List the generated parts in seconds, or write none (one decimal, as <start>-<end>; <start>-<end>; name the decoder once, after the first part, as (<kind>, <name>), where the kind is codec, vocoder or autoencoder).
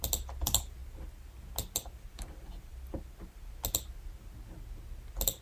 none